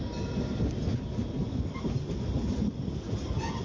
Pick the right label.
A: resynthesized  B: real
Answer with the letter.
B